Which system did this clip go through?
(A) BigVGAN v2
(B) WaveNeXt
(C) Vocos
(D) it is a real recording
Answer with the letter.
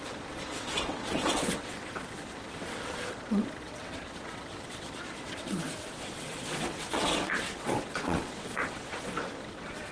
B